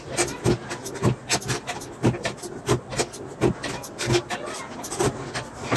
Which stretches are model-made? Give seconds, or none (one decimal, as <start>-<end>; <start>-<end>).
none